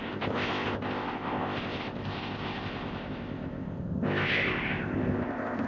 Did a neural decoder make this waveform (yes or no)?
yes